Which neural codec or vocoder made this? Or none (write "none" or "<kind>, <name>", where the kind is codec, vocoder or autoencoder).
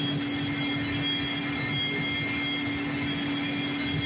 none